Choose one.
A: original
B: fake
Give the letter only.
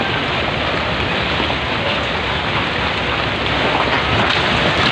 A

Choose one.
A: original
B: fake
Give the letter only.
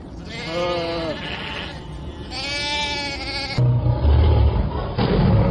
A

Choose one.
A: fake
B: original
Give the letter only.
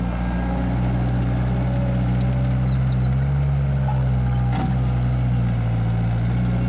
B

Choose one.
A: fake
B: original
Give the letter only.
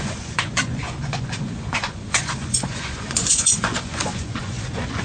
A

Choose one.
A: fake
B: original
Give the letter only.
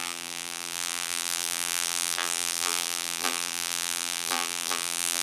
A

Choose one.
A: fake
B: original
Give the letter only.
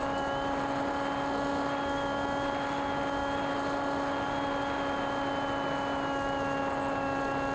B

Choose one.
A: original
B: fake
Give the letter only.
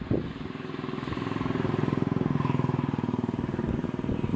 A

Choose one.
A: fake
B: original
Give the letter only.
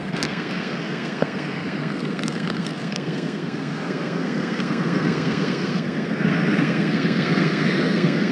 A